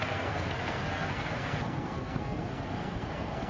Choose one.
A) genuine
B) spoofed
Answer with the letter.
B